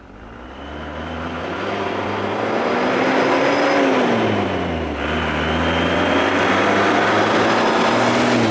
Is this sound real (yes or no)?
yes